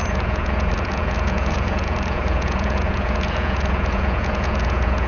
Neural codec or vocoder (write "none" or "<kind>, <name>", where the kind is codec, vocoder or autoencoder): vocoder, Vocos